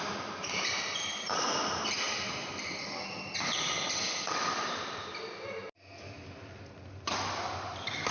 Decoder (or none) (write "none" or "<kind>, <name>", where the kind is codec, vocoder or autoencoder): none